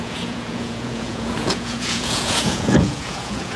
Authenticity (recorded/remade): remade